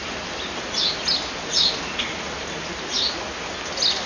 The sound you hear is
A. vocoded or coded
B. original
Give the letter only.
B